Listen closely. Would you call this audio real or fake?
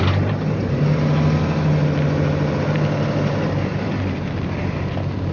real